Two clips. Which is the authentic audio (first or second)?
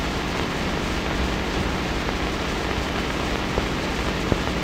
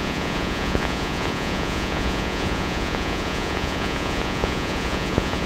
first